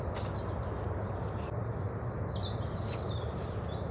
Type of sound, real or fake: real